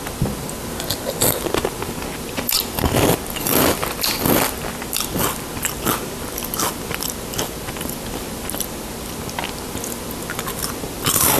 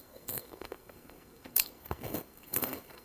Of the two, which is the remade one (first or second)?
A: second